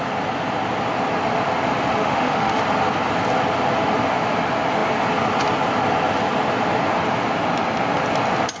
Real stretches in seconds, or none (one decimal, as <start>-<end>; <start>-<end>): 0.0-2.0; 2.6-8.6